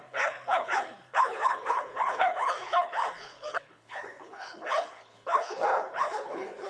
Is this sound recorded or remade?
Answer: remade